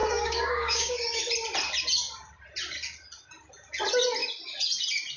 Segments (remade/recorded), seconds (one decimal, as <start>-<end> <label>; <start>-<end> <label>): 0.0-1.2 remade; 1.2-5.2 recorded